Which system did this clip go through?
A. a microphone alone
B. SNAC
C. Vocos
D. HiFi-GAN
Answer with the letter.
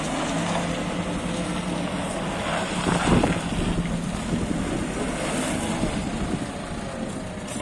A